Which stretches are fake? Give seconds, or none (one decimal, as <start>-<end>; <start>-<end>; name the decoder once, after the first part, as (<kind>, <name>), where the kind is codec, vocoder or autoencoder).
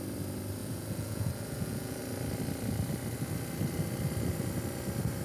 0.6-2.0 (vocoder, Vocos)